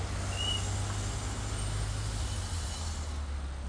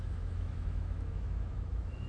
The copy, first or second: second